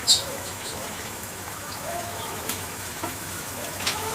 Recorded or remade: remade